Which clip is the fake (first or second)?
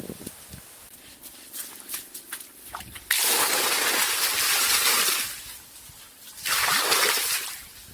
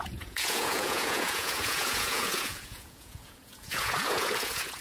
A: second